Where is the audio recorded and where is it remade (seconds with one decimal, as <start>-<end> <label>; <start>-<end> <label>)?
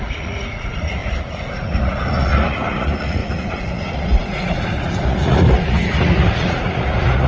0.0-7.3 remade